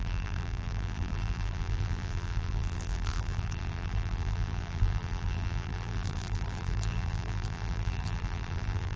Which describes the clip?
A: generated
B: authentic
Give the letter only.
A